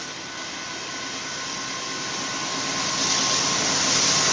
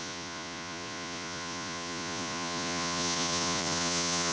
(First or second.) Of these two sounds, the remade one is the second